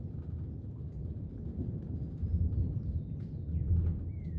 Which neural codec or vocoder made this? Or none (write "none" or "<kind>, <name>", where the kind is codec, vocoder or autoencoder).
none